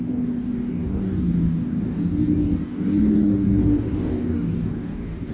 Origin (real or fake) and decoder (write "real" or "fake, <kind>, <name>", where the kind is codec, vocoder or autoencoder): fake, codec, DAC